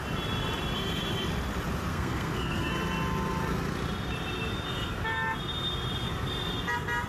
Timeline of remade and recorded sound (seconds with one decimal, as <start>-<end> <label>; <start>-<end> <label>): 0.0-1.9 recorded; 1.9-2.7 remade; 2.7-7.1 recorded